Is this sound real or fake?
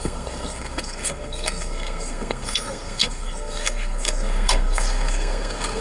fake